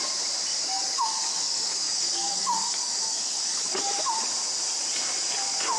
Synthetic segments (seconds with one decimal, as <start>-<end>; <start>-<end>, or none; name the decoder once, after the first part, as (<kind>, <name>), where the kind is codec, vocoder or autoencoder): 0.5-4.0 (codec, DAC)